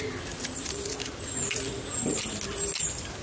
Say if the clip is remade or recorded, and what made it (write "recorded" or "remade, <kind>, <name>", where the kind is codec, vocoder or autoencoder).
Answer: recorded